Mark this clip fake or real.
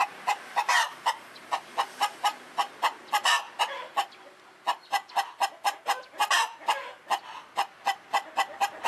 fake